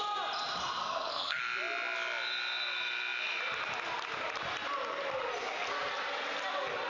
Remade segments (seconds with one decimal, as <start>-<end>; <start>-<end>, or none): 0.8-1.4